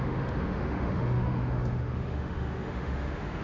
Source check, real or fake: fake